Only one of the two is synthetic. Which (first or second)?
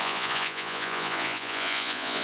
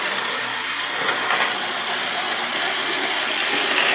first